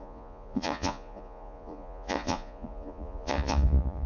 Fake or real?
fake